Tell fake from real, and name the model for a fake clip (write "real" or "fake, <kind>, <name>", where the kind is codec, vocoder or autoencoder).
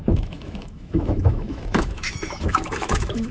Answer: fake, autoencoder, DAC-VAE